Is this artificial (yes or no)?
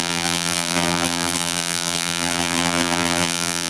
yes